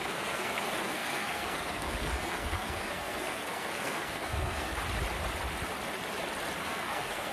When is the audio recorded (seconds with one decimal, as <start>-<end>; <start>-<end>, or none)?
4.7-6.6